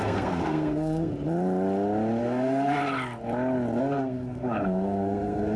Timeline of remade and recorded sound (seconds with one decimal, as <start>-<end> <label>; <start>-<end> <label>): 0.0-1.1 remade; 1.1-2.2 recorded; 2.2-2.8 remade; 2.8-3.8 recorded; 3.8-5.6 remade